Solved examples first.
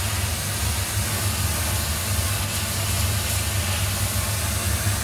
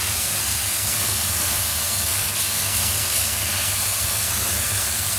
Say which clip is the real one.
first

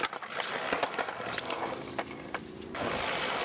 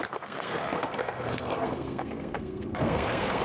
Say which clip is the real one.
first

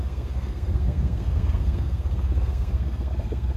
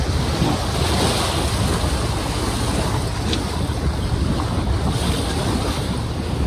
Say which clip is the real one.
second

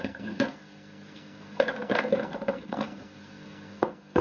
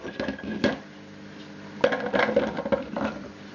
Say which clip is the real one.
second